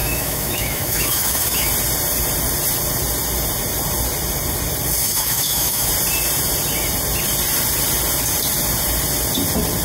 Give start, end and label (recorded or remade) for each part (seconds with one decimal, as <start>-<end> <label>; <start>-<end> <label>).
0.0-1.7 remade; 1.7-5.0 recorded; 5.0-5.9 remade; 5.9-9.8 recorded